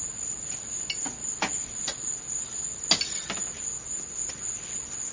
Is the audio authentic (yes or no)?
yes